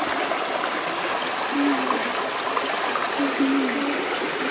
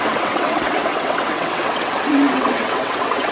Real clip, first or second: first